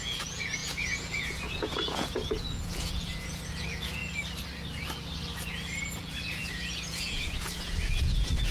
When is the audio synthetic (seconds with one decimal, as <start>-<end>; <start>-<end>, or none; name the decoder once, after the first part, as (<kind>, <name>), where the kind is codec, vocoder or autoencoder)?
0.0-4.0 (vocoder, Vocos); 6.0-8.5